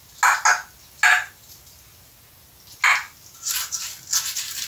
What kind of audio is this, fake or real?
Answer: real